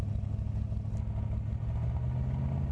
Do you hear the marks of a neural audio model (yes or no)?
no